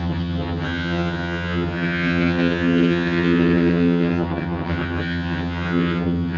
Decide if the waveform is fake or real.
fake